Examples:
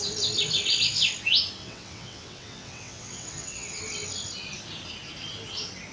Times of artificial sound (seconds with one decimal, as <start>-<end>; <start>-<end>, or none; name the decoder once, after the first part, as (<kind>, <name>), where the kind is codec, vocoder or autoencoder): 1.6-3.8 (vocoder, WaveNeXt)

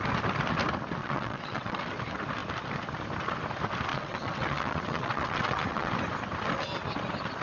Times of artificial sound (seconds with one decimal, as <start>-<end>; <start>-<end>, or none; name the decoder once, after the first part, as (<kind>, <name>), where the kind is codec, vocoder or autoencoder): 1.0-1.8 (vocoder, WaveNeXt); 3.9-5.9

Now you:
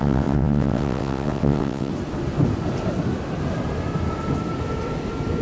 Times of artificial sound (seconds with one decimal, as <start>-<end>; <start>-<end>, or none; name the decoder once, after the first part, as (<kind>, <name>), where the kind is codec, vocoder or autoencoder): 0.0-1.9 (vocoder, WaveNeXt)

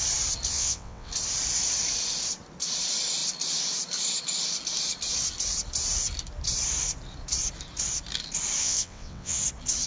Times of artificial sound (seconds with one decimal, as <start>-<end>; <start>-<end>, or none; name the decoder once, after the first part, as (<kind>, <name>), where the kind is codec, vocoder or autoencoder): 0.5-1.1 (vocoder, WaveNeXt); 8.6-9.4

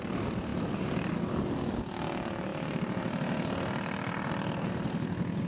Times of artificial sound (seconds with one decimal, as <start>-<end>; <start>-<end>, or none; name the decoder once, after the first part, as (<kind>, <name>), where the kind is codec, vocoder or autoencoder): none

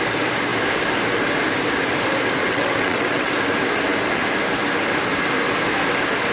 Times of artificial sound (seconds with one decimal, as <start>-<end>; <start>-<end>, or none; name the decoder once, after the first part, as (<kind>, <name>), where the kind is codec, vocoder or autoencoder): 2.4-3.3 (vocoder, WaveNeXt)

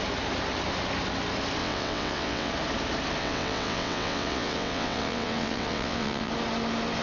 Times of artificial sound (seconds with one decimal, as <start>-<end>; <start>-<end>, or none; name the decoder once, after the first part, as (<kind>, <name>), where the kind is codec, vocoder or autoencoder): 1.6-2.5 (vocoder, WaveNeXt); 3.2-6.3

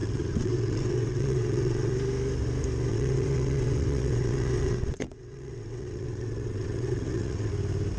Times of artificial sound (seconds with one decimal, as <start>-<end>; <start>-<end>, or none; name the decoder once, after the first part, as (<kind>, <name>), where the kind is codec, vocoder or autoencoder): 0.0-1.9 (vocoder, WaveNeXt); 2.9-7.5